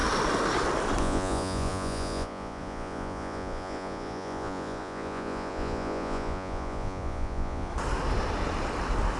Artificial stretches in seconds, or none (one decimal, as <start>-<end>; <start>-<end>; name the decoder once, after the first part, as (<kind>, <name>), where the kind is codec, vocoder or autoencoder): 1.0-7.7 (vocoder, Vocos)

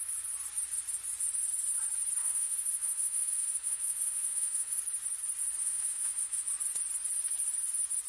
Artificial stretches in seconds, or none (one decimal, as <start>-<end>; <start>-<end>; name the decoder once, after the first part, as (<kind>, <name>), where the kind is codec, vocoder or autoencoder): 2.2-4.8 (autoencoder, DAC-VAE); 5.6-6.5

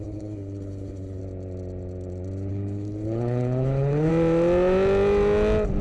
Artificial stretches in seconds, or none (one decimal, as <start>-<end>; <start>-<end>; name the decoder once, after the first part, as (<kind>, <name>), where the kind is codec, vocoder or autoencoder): 0.0-1.2 (codec, HILCodec); 2.5-4.1

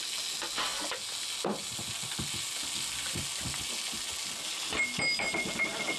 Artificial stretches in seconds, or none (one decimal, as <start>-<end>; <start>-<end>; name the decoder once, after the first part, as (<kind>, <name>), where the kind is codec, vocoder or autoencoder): none